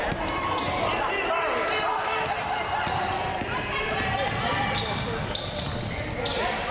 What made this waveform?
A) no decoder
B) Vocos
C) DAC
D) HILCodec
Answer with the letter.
A